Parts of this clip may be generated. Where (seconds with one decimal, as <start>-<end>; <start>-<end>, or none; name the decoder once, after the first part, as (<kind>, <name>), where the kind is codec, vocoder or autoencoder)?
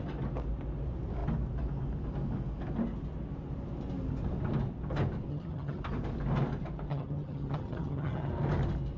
5.3-5.8 (vocoder, HiFi-GAN); 6.9-8.3